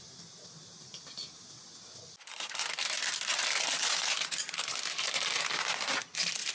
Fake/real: real